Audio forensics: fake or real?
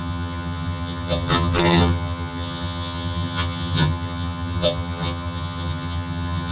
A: fake